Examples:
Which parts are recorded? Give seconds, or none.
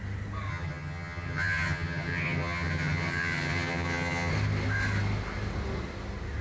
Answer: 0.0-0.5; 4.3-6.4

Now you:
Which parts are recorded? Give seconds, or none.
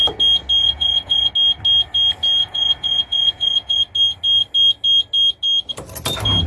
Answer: 0.0-0.6; 1.3-2.4; 3.8-6.5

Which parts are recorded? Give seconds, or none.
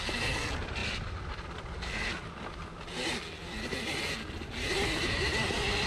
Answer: 0.0-5.9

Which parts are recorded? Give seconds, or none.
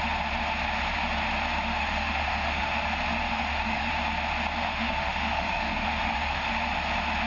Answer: 0.0-1.8; 2.8-3.3; 3.9-4.6; 6.5-7.3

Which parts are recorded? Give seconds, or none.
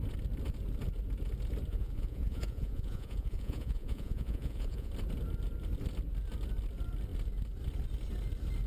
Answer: 0.0-1.7; 4.9-8.7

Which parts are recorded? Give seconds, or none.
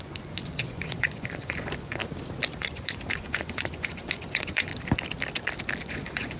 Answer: 2.0-2.5; 4.7-5.8